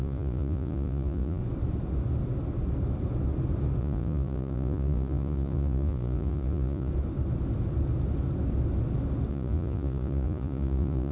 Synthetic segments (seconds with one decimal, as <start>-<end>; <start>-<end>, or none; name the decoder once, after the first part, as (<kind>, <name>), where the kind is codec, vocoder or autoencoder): 0.0-1.4 (vocoder, Vocos); 3.8-6.9; 9.3-11.1